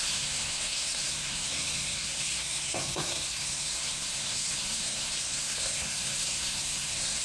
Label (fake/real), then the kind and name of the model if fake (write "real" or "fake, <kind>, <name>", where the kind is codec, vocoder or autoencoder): fake, codec, SNAC